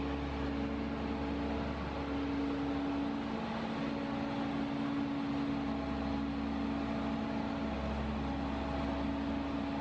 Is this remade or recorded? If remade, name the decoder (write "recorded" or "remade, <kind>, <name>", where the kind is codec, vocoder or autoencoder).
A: recorded